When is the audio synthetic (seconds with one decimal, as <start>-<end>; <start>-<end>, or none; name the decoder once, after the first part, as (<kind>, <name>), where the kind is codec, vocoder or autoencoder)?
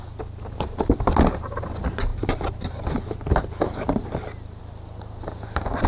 none